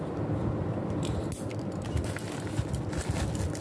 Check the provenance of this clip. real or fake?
real